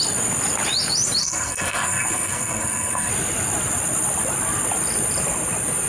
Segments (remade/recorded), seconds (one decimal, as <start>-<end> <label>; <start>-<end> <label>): 0.0-1.2 recorded; 1.2-3.1 remade; 3.1-5.9 recorded